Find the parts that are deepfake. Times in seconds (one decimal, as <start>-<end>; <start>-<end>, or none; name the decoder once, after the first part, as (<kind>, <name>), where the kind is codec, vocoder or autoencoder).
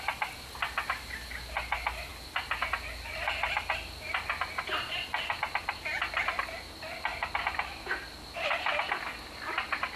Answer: none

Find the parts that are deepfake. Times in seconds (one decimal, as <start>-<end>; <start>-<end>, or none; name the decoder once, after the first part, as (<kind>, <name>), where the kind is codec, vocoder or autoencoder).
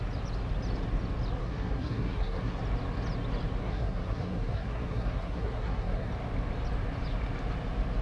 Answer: 1.4-2.6 (codec, SNAC); 3.6-6.1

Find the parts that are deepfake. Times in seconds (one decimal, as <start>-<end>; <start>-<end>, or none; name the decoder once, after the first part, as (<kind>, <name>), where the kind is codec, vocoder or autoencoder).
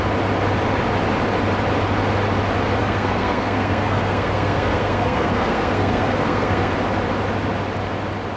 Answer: 2.8-6.7 (codec, SNAC)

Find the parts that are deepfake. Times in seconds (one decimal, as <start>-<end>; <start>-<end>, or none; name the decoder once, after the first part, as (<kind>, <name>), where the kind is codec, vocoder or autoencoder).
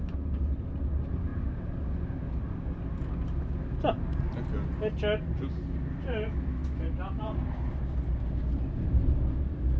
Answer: none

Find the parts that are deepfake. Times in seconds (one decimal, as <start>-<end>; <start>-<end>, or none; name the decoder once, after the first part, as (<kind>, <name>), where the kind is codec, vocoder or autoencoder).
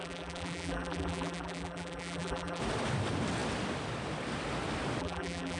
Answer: 0.0-2.6 (vocoder, BigVGAN v2); 5.0-5.6